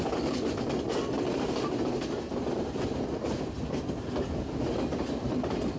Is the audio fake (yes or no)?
no